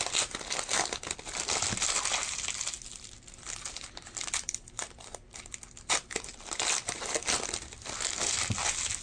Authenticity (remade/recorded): recorded